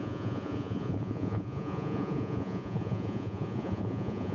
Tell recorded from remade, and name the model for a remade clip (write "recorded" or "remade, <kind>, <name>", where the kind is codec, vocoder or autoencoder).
remade, vocoder, Vocos